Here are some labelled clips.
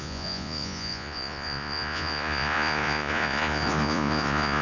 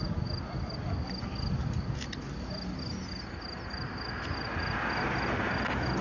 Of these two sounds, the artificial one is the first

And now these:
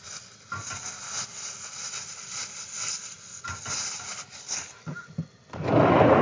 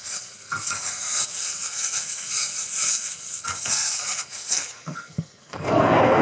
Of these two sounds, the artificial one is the second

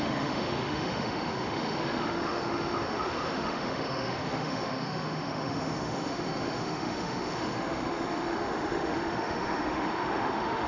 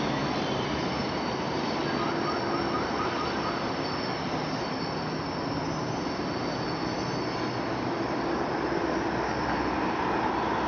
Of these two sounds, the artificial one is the first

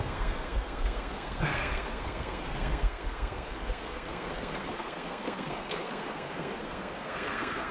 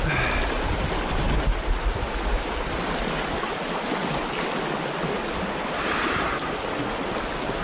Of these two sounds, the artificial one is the first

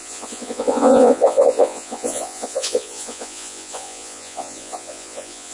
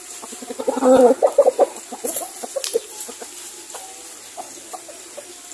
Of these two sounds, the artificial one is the first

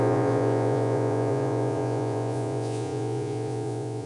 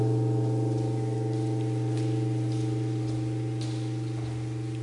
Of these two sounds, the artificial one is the first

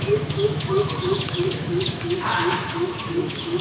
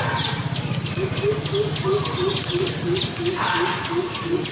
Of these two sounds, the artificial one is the first